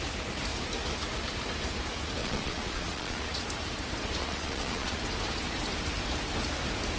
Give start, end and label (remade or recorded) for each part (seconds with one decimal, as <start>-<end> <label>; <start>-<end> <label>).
0.0-2.2 recorded; 2.2-3.4 remade; 3.4-4.2 recorded; 4.2-5.0 remade; 5.0-7.0 recorded